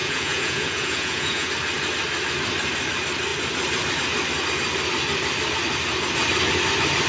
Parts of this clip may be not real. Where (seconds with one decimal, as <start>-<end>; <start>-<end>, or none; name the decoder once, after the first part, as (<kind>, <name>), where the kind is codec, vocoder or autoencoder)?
0.0-1.5 (vocoder, Vocos)